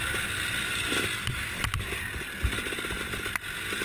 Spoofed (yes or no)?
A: no